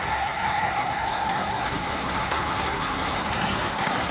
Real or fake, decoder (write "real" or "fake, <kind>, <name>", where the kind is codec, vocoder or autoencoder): fake, codec, SNAC